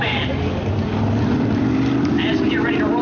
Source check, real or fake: fake